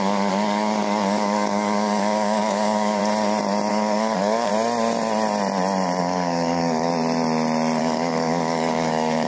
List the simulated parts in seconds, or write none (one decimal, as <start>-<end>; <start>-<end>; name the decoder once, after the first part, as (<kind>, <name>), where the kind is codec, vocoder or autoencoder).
0.0-3.0 (codec, DAC); 3.7-4.5; 6.0-6.9; 7.8-9.3